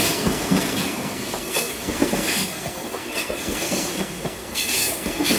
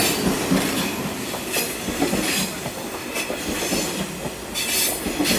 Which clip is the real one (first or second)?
second